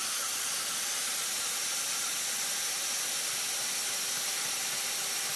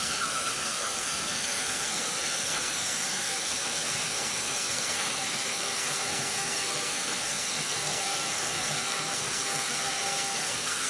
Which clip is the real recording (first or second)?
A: first